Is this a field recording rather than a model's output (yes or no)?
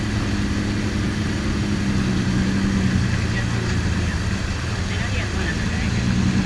yes